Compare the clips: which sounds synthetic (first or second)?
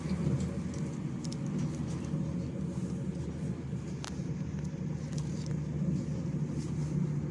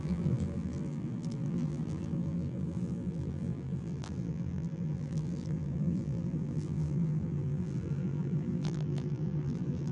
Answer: second